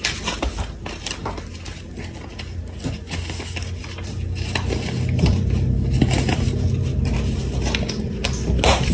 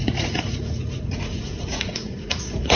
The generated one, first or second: second